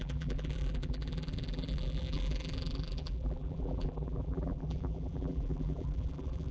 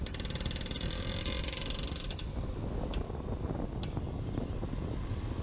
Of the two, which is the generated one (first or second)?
first